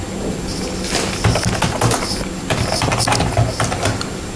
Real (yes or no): yes